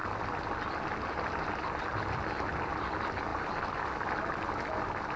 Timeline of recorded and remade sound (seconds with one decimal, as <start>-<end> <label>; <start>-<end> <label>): 0.0-5.2 recorded